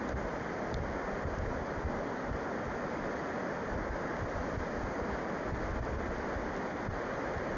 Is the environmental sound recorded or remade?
recorded